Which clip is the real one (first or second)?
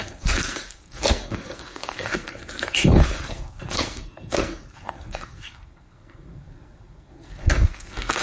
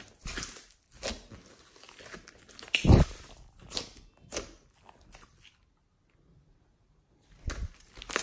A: second